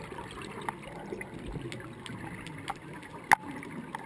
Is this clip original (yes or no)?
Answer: yes